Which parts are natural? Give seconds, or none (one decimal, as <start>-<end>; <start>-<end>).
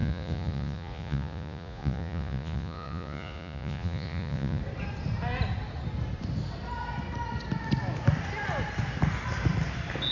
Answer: 4.6-10.1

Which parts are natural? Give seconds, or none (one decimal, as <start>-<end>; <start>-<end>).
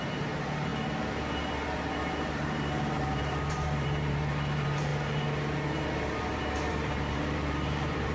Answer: 0.7-2.3; 4.9-6.7